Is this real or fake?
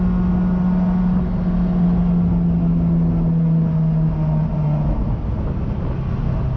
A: real